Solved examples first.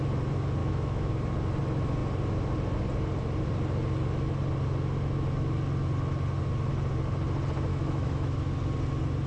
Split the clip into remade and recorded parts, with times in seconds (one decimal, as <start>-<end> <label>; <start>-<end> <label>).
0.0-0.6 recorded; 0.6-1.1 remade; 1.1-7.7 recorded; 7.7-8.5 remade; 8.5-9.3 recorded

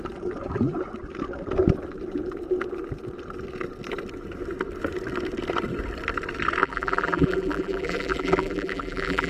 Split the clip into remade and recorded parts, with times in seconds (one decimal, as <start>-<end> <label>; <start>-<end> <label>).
0.0-6.6 recorded; 6.6-9.3 remade

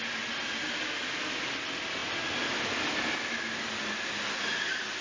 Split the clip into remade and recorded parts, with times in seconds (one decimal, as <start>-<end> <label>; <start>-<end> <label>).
0.0-5.0 recorded